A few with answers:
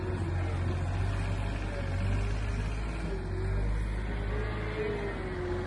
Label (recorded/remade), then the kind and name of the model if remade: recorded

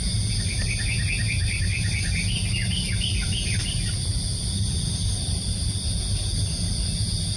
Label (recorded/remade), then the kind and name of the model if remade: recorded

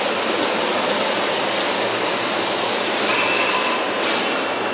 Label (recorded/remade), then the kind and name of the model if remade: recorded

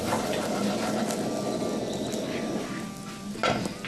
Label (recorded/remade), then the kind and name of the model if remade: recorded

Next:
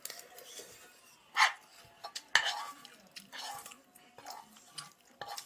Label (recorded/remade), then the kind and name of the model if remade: recorded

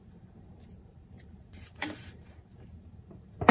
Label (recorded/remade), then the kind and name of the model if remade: remade, vocoder, BigVGAN v2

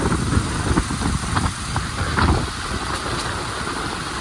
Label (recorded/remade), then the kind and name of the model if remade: recorded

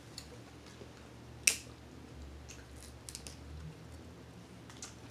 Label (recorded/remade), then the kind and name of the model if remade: recorded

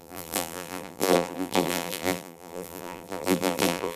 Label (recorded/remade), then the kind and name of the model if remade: remade, vocoder, BigVGAN v2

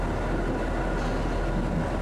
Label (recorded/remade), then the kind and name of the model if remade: recorded